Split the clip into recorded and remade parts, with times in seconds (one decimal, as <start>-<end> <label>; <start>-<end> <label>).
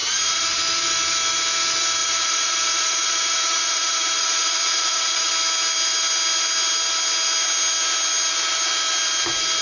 0.0-0.6 remade; 0.6-2.0 recorded; 2.0-5.3 remade; 5.3-9.6 recorded